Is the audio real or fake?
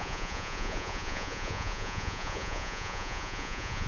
fake